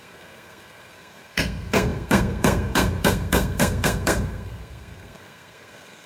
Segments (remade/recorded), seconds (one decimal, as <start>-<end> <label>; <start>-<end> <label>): 0.0-6.1 remade